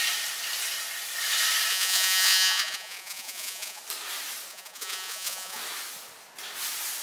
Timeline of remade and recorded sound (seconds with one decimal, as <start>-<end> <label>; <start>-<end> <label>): 0.0-1.7 recorded; 1.7-3.8 remade; 3.8-4.5 recorded; 4.5-5.6 remade; 5.6-7.0 recorded